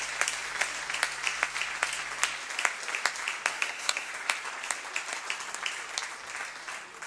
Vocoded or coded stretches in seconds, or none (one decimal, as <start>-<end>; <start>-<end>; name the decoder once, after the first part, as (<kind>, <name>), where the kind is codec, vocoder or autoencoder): 3.5-4.1 (codec, SNAC)